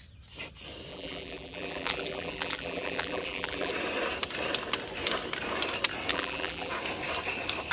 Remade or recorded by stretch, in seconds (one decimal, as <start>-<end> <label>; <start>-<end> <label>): 0.0-0.9 recorded; 0.9-3.7 remade; 3.7-6.1 recorded; 6.1-6.7 remade; 6.7-7.7 recorded